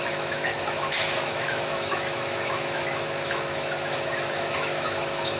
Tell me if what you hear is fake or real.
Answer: fake